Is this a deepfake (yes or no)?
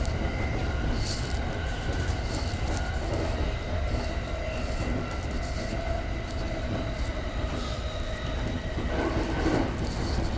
no